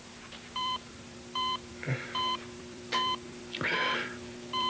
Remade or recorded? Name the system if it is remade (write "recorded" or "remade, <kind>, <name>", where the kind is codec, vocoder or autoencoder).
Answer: remade, vocoder, BigVGAN v2